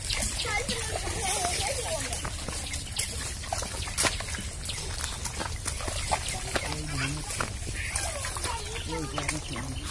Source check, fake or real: real